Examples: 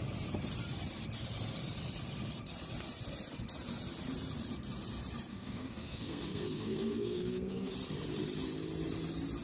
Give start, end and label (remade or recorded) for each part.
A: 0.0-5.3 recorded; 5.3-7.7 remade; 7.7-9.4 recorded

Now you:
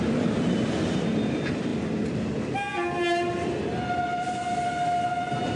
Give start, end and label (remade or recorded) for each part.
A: 0.0-5.6 recorded

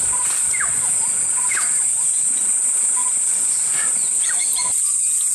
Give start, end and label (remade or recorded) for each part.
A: 0.0-5.3 recorded

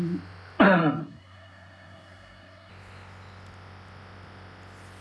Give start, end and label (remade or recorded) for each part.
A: 0.0-1.0 recorded; 1.0-2.7 remade; 2.7-5.0 recorded

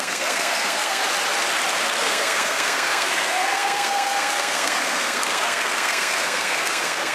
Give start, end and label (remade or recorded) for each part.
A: 0.0-1.0 remade; 1.0-2.0 recorded; 2.0-7.1 remade

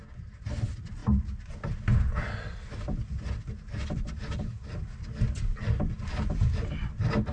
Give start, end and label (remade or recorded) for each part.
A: 0.0-7.3 recorded

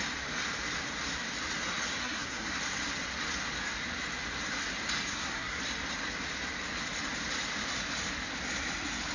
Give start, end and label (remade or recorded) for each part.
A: 0.0-2.0 recorded; 2.0-2.6 remade; 2.6-5.1 recorded; 5.1-5.6 remade; 5.6-9.1 recorded

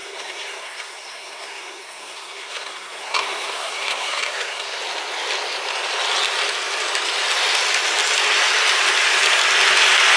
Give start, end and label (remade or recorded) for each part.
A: 0.0-4.8 remade; 4.8-10.2 recorded